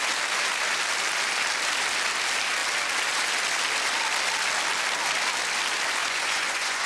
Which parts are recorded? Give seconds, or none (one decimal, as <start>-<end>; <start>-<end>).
0.0-6.0